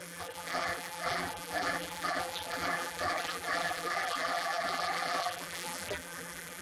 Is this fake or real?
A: fake